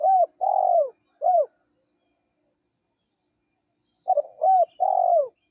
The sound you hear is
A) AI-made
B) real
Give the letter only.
B